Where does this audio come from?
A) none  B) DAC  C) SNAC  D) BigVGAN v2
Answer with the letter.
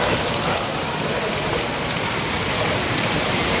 D